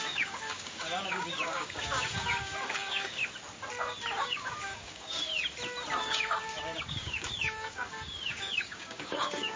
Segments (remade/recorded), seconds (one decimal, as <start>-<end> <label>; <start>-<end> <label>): 0.0-3.2 remade; 3.2-4.2 recorded; 4.2-5.3 remade; 5.3-6.0 recorded; 6.0-9.6 remade